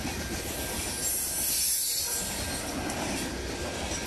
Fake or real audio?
real